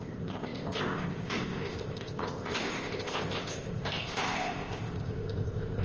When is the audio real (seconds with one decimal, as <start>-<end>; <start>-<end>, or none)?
none